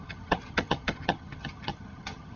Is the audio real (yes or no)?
no